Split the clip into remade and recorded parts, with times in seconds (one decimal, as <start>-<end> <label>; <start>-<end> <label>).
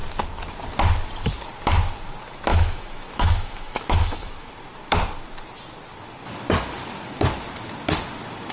0.0-2.5 recorded; 2.5-4.5 remade; 4.5-8.5 recorded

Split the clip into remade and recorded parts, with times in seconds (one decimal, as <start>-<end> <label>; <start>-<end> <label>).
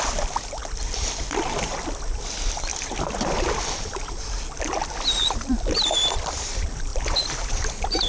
0.0-0.6 remade; 0.6-1.5 recorded; 1.5-2.7 remade; 2.7-5.2 recorded; 5.2-8.1 remade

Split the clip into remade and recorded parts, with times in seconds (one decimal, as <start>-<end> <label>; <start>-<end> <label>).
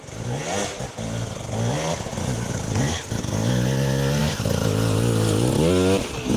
0.0-6.4 recorded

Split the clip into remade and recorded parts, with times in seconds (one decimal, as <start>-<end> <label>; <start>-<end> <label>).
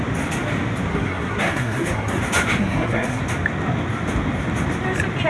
0.0-0.9 recorded; 0.9-2.2 remade; 2.2-2.6 recorded; 2.6-3.2 remade; 3.2-5.3 recorded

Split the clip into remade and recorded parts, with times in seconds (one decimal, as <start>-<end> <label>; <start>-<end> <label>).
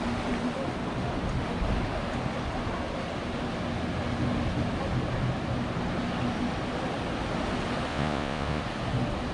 0.0-7.9 recorded; 7.9-8.6 remade; 8.6-9.3 recorded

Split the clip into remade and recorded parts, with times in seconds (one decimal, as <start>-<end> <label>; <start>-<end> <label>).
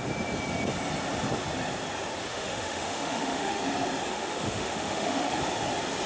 0.0-2.3 recorded; 2.3-3.6 remade; 3.6-4.1 recorded; 4.1-5.4 remade; 5.4-6.1 recorded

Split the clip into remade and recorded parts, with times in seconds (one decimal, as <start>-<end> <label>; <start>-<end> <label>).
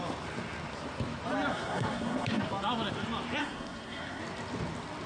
0.0-1.5 recorded; 1.5-2.4 remade; 2.4-3.4 recorded; 3.4-4.2 remade; 4.2-5.1 recorded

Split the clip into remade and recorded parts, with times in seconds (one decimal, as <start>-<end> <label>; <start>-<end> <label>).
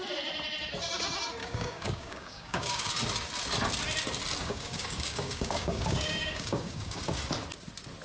0.0-1.4 recorded; 1.4-2.9 remade; 2.9-4.4 recorded; 4.4-7.0 remade; 7.0-8.0 recorded